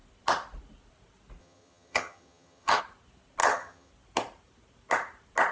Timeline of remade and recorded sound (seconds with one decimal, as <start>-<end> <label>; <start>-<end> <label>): 0.0-1.4 recorded; 1.4-2.8 remade; 2.8-3.4 recorded; 3.4-3.9 remade; 3.9-5.5 recorded